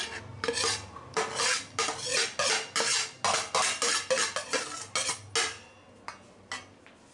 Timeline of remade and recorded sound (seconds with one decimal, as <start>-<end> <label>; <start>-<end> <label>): 0.0-7.1 recorded

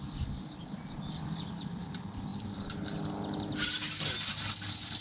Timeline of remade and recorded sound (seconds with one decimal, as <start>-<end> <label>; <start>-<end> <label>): 0.0-0.6 recorded; 0.6-1.8 remade; 1.8-5.0 recorded

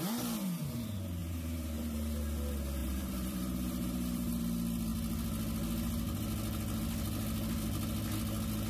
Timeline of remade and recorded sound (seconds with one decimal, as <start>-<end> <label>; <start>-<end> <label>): 0.0-1.2 recorded; 1.2-2.2 remade; 2.2-2.8 recorded; 2.8-4.4 remade; 4.4-8.7 recorded

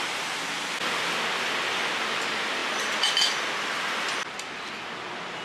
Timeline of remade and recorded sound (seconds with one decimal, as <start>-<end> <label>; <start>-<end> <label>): 0.0-5.4 recorded

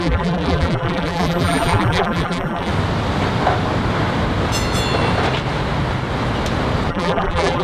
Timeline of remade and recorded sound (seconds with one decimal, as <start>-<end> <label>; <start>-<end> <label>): 0.0-2.7 remade; 2.7-6.9 recorded; 6.9-7.6 remade

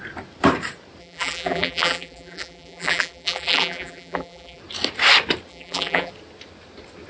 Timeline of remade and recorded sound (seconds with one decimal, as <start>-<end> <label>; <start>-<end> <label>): 0.0-1.0 recorded; 1.0-4.6 remade; 4.6-5.5 recorded; 5.5-6.1 remade; 6.1-7.1 recorded

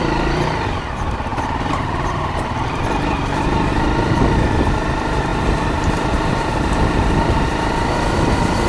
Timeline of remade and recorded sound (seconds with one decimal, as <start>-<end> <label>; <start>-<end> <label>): 0.0-8.7 remade